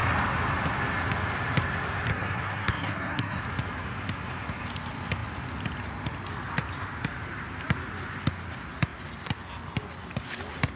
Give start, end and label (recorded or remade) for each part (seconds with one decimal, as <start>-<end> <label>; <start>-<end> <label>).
0.0-2.1 recorded; 2.1-3.4 remade; 3.4-10.8 recorded